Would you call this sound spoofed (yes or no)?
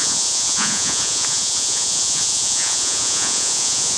yes